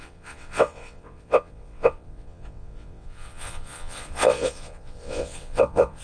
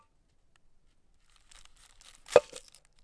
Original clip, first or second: second